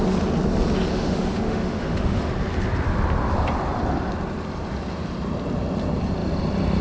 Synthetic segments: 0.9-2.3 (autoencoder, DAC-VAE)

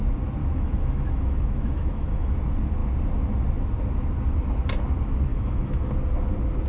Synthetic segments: 0.4-2.4 (autoencoder, DAC-VAE); 5.3-5.9

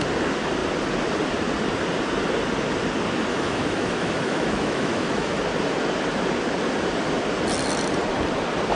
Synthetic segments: 3.3-5.4 (autoencoder, DAC-VAE)

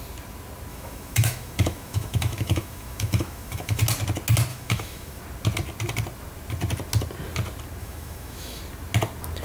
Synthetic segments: 0.7-3.8 (autoencoder, DAC-VAE); 4.5-5.2; 7.8-8.6

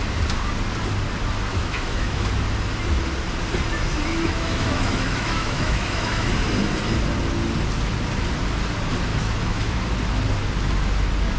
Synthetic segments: 1.5-2.3 (autoencoder, DAC-VAE); 4.1-6.3; 9.1-9.8